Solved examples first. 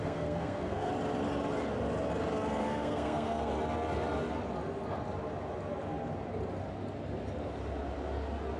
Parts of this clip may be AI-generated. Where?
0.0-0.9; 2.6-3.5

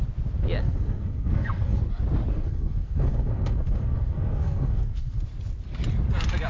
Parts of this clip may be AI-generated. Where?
0.6-1.8; 2.3-5.2

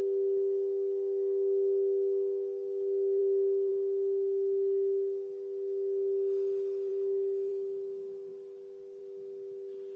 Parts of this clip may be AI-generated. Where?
none

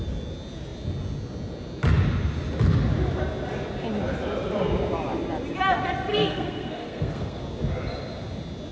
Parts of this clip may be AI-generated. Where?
6.1-7.4

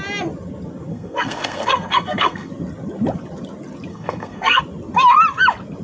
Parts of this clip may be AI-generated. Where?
0.9-2.5; 3.9-4.6

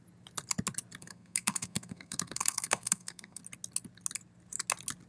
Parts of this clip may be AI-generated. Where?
1.0-3.4

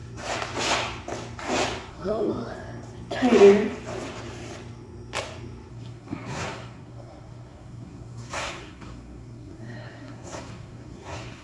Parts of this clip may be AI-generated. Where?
1.9-2.3; 5.7-11.4